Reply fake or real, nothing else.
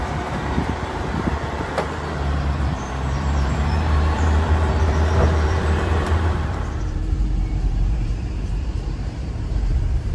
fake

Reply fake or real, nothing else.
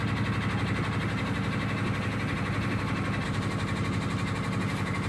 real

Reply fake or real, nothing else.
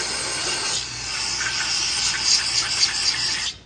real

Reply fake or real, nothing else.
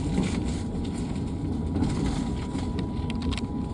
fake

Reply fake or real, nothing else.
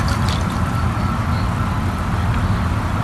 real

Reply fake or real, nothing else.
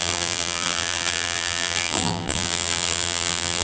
fake